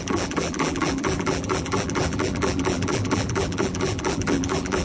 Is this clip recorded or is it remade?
remade